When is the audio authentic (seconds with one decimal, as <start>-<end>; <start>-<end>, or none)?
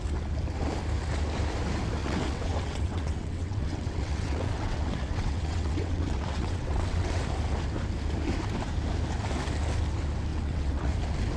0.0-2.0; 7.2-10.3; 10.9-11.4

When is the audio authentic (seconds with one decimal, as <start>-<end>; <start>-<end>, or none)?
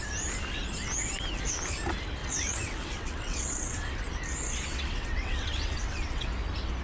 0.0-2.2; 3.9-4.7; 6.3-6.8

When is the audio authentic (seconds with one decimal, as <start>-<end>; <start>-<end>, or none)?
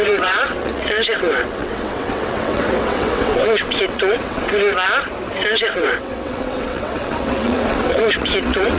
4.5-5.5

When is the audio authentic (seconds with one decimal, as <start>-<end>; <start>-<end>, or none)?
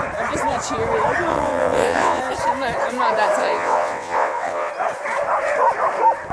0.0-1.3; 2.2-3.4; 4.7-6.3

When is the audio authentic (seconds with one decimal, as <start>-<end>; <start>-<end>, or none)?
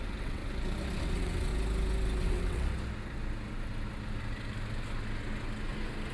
0.4-1.0; 1.5-2.2; 2.7-6.1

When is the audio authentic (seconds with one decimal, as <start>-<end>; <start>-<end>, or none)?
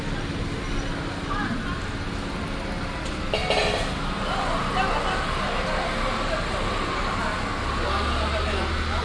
0.0-9.0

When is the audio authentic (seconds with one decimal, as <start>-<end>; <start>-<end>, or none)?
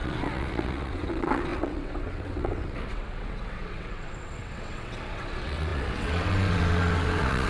none